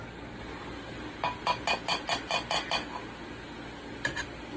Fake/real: real